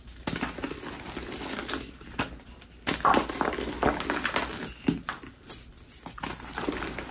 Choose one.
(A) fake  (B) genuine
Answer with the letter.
B